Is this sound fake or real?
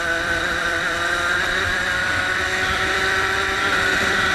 fake